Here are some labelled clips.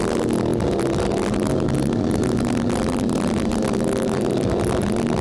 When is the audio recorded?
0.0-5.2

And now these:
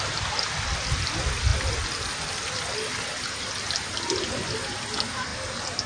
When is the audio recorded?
0.0-5.3

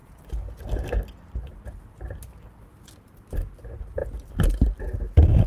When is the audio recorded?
0.0-3.3; 4.0-5.5

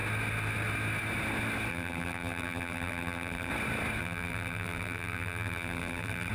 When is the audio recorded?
0.0-1.7; 3.5-4.0